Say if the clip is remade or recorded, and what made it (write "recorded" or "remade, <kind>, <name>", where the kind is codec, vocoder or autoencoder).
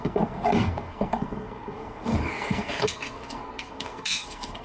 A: remade, codec, SNAC